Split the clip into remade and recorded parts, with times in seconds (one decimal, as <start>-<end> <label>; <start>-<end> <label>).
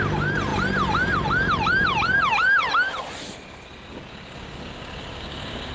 0.0-3.9 recorded; 3.9-5.7 remade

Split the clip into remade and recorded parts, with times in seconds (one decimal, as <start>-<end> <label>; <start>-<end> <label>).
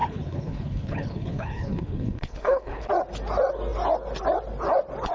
0.0-2.9 remade; 2.9-5.1 recorded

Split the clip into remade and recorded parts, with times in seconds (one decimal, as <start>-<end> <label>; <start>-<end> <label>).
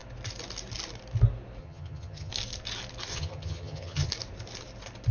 0.0-1.6 recorded; 1.6-2.3 remade; 2.3-3.1 recorded; 3.1-4.1 remade; 4.1-5.1 recorded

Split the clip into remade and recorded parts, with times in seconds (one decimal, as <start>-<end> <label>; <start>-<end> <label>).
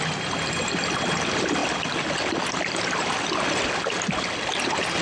0.0-5.0 recorded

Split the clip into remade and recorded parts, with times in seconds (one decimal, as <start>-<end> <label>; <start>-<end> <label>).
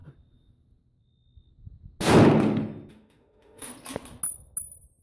0.0-2.9 recorded; 2.9-3.7 remade; 3.7-5.0 recorded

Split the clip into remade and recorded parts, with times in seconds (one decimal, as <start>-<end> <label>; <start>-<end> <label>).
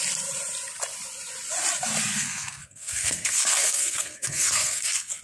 0.0-2.1 recorded; 2.1-5.2 remade